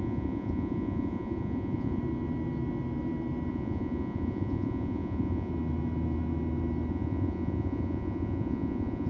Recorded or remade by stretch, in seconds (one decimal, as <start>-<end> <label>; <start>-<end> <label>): 0.0-2.0 remade; 2.0-3.5 recorded; 3.5-5.5 remade; 5.5-6.9 recorded; 6.9-9.1 remade